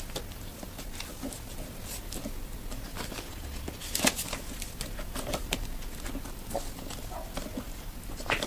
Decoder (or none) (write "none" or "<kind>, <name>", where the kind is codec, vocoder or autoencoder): none